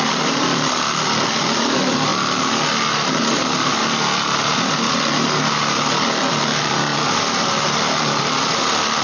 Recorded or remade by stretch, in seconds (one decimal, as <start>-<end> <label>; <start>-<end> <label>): 0.0-2.1 remade; 2.1-6.3 recorded; 6.3-9.0 remade